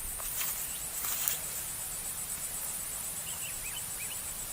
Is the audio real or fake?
fake